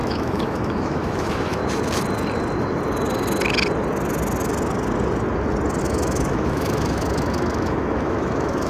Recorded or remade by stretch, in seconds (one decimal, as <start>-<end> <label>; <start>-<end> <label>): 0.0-1.6 remade; 1.6-5.8 recorded; 5.8-8.7 remade